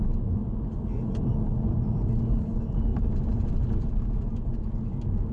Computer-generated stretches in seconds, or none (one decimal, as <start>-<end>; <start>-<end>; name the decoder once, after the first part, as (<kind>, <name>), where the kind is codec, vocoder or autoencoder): 2.9-4.7 (vocoder, BigVGAN v2)